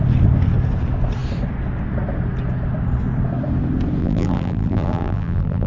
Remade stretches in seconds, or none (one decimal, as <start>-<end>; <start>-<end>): 4.0-5.7